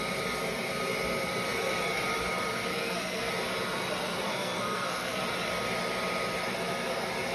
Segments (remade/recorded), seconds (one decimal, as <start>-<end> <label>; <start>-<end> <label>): 0.0-2.7 recorded; 2.7-3.3 remade; 3.3-4.3 recorded; 4.3-5.2 remade; 5.2-7.3 recorded